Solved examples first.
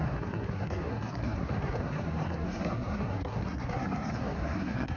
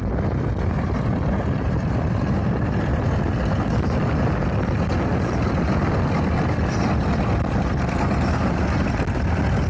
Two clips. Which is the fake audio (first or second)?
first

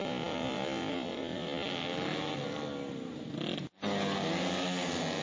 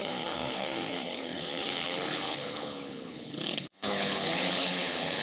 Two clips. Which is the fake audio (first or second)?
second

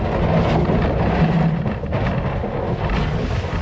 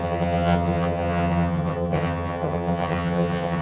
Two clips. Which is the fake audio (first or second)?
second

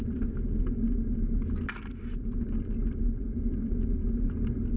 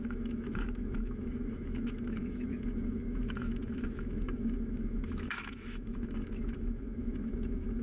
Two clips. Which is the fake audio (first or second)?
second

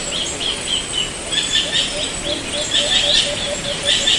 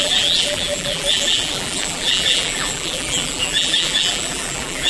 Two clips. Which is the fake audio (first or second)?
second